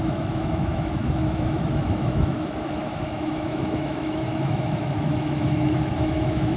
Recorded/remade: remade